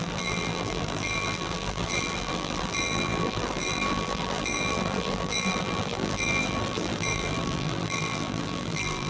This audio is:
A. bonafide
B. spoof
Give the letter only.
B